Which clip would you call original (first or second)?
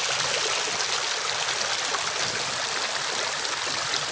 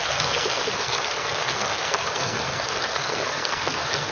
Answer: first